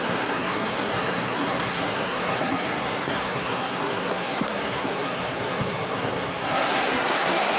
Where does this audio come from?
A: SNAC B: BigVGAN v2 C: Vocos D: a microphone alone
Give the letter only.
A